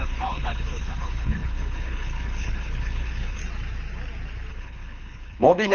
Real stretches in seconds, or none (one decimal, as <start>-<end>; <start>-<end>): 3.4-4.5